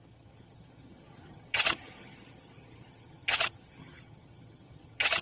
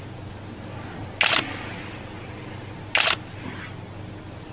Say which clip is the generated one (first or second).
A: first